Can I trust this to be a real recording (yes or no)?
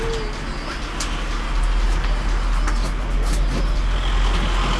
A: yes